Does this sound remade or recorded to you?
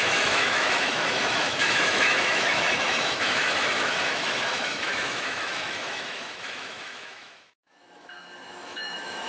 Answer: remade